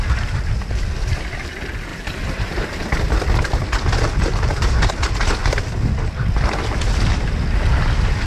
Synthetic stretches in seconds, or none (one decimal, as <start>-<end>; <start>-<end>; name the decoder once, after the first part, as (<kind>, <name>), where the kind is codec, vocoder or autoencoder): 1.9-2.8 (vocoder, BigVGAN v2); 4.3-4.9